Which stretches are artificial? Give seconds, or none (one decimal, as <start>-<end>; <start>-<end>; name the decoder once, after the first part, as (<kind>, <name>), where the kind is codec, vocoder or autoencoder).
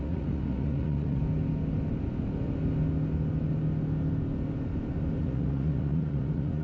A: 0.0-1.2 (vocoder, Vocos); 5.2-6.6